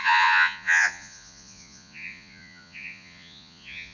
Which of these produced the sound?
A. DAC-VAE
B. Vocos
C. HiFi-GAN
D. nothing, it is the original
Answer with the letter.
B